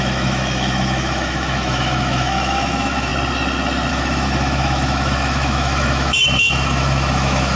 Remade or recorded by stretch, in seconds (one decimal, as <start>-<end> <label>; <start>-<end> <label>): 0.0-3.1 remade; 3.1-3.9 recorded; 3.9-7.6 remade